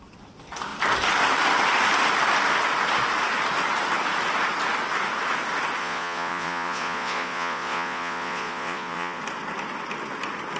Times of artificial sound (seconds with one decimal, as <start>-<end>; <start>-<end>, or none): 5.8-9.2